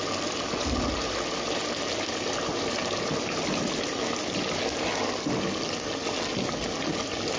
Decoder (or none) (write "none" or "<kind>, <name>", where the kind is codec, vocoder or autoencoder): none